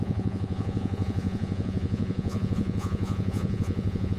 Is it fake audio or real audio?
fake